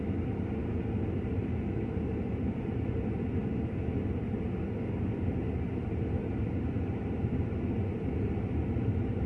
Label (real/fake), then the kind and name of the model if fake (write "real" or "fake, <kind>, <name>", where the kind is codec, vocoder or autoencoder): real